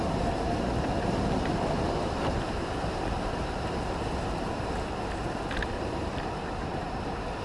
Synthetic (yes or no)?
yes